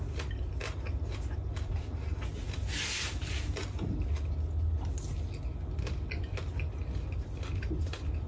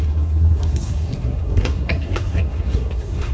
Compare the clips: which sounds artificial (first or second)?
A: second